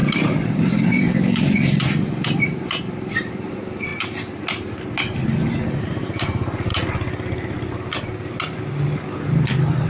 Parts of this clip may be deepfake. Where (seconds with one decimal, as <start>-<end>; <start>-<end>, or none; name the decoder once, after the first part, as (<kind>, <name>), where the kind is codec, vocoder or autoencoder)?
0.0-3.9 (vocoder, BigVGAN v2); 5.8-6.7; 9.3-9.9

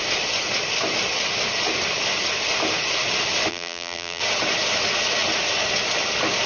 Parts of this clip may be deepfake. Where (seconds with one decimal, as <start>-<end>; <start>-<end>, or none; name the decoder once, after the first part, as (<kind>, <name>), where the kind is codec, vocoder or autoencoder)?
3.5-4.2 (vocoder, BigVGAN v2)

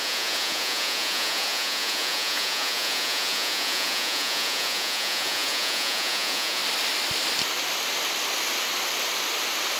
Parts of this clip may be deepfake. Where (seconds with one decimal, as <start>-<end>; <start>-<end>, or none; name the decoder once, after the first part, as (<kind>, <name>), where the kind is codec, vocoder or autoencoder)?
0.0-6.6 (vocoder, Vocos)

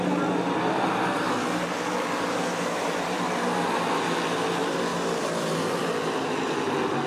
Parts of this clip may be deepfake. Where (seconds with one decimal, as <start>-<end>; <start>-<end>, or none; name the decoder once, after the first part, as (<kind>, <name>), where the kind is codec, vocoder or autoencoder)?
none

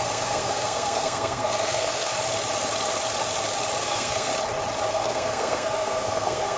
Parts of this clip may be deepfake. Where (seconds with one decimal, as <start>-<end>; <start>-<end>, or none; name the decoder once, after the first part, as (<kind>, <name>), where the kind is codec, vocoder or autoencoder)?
0.0-2.1 (codec, SNAC); 3.8-4.3; 4.9-6.6

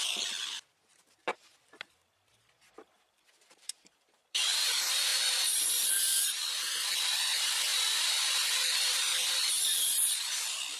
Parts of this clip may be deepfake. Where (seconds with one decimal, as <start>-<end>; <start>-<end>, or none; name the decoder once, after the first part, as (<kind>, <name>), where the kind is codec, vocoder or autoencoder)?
0.0-5.1 (vocoder, BigVGAN v2); 5.6-10.8

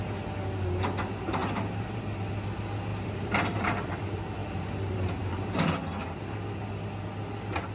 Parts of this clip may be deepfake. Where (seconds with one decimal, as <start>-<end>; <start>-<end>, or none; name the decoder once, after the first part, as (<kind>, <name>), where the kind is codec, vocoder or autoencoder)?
1.4-2.0 (vocoder, BigVGAN v2); 2.9-4.0; 4.4-5.6

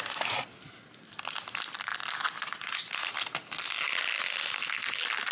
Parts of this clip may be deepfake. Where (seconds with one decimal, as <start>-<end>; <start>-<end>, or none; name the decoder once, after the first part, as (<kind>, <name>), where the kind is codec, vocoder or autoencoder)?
none